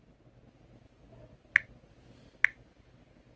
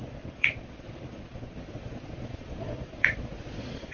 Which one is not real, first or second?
second